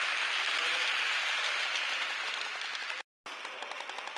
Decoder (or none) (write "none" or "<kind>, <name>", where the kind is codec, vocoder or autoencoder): none